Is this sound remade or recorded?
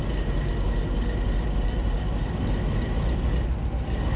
recorded